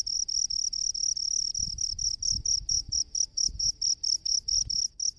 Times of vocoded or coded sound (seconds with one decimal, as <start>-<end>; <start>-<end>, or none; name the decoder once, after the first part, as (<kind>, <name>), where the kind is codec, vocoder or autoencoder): none